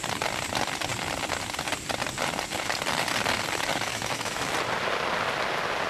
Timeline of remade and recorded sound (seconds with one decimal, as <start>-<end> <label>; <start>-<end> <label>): 0.0-3.9 recorded; 3.9-4.5 remade; 4.5-5.9 recorded